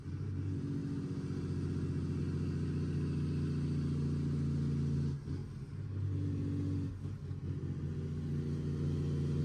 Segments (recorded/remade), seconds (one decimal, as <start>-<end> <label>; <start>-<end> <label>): 0.0-9.4 recorded